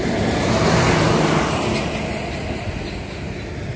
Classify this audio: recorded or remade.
recorded